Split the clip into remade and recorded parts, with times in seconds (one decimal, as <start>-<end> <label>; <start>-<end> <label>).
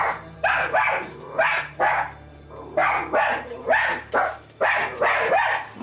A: 0.0-5.8 recorded